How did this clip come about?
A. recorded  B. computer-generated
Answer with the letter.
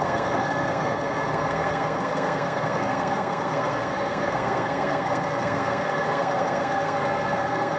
B